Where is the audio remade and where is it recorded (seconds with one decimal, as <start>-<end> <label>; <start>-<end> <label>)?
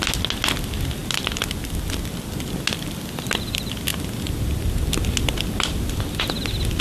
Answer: 0.0-1.0 recorded; 1.0-2.4 remade; 2.4-3.9 recorded; 3.9-6.2 remade; 6.2-6.8 recorded